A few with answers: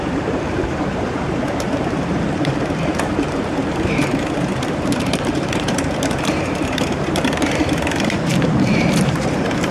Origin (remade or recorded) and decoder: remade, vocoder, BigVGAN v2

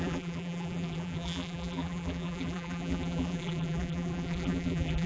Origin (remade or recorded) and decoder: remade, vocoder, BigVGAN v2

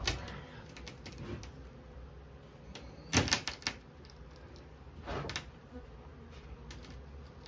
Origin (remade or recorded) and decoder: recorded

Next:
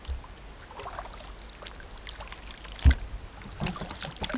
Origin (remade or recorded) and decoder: recorded